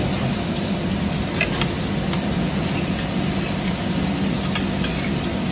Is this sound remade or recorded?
recorded